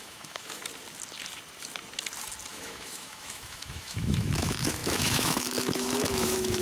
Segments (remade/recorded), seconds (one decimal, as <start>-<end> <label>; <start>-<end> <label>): 0.0-0.6 remade; 0.6-2.5 recorded; 2.5-6.6 remade